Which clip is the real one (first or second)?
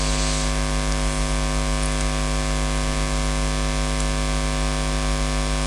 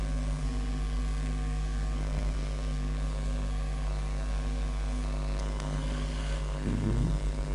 first